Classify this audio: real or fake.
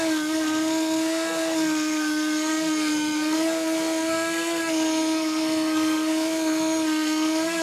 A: fake